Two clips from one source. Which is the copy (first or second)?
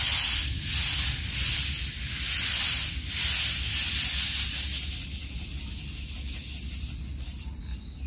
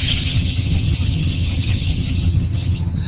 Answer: second